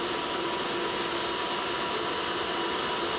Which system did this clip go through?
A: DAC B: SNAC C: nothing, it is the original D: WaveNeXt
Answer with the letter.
C